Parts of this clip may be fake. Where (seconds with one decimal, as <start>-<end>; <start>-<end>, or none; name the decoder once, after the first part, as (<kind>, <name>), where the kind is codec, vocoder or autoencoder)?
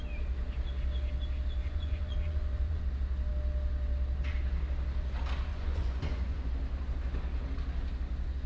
1.6-2.8 (vocoder, Vocos); 5.5-6.5